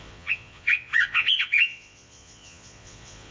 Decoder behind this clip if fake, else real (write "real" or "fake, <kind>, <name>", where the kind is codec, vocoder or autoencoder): fake, vocoder, Vocos